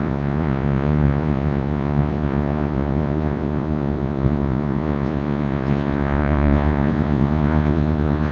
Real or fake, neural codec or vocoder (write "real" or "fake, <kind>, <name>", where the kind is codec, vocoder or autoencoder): fake, vocoder, Vocos